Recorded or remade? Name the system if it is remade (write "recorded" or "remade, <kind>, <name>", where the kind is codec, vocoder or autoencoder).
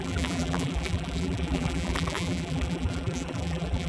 remade, vocoder, BigVGAN v2